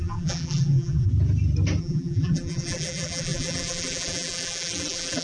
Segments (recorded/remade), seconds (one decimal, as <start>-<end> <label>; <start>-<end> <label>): 0.0-1.1 remade; 1.1-1.8 recorded; 1.8-5.2 remade